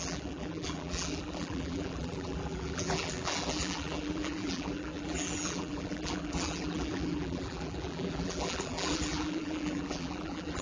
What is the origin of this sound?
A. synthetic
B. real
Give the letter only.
A